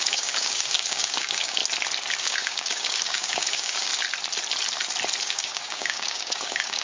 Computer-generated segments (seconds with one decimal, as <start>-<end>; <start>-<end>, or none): 0.0-1.6; 2.2-3.9; 5.2-6.8